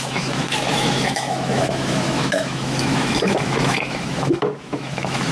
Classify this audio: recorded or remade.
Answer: remade